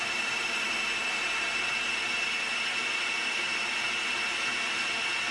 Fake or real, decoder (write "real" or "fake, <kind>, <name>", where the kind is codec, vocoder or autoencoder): real